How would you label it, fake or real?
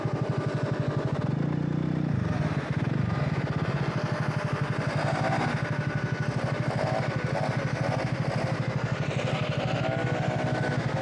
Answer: real